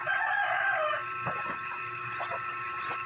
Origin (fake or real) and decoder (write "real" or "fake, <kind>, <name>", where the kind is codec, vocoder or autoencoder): real